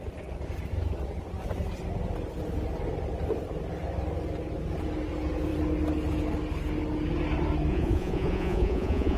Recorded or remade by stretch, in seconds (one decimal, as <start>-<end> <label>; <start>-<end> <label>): 0.0-7.7 recorded; 7.7-9.2 remade